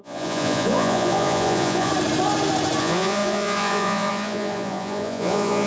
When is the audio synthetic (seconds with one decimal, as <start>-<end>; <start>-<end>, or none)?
0.0-1.9; 2.8-5.7

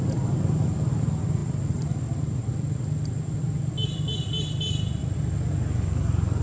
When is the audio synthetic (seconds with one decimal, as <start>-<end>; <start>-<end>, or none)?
none

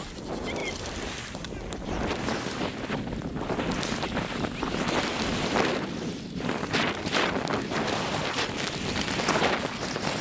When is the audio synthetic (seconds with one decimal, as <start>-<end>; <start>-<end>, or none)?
none

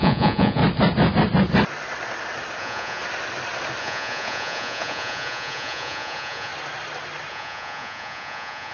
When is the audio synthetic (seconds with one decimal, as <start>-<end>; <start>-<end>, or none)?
0.0-0.6; 2.6-3.0; 3.8-6.5; 7.3-8.7

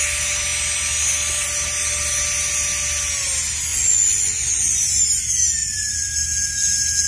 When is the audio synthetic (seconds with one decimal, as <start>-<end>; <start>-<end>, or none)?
3.7-5.0; 5.6-6.1

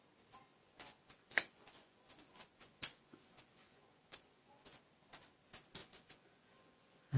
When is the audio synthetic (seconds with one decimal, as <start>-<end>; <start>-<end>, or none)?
0.5-4.8; 5.8-7.2

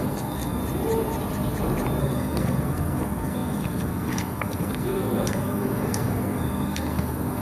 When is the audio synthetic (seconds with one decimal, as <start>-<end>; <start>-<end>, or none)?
0.0-0.6; 2.0-7.4